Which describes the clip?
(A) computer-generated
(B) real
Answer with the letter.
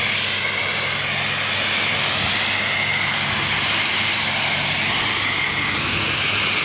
B